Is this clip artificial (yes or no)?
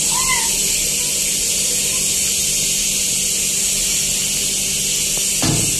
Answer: no